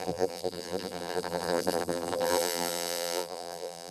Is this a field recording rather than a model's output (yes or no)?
no